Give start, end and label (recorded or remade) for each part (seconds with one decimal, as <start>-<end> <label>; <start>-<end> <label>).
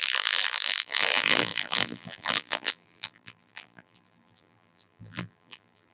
0.0-5.9 remade